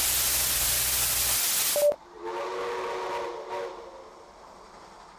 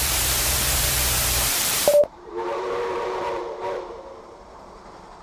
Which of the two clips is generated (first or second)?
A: second